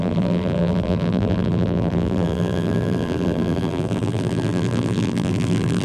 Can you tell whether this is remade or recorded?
remade